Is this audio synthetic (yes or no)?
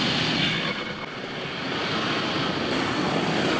no